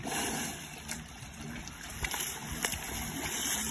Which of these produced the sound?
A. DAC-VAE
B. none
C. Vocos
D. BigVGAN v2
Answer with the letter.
B